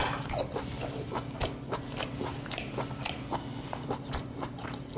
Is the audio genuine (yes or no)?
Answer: yes